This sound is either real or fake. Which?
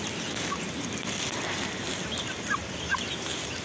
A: real